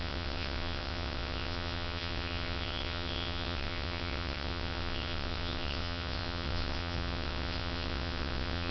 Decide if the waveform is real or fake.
fake